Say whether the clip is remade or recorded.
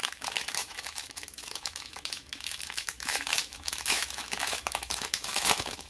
remade